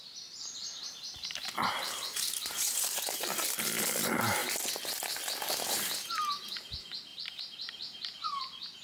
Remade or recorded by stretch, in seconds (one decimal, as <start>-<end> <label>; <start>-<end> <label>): 0.0-0.6 recorded; 0.6-3.4 remade; 3.4-7.1 recorded; 7.1-8.4 remade; 8.4-8.8 recorded